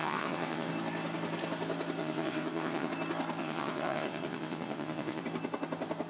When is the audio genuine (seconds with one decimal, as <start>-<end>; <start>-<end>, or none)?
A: 0.7-2.0; 2.9-3.4; 5.2-6.1